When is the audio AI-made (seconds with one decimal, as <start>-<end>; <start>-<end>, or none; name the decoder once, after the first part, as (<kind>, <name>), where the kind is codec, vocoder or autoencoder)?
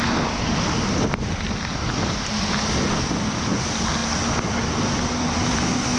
none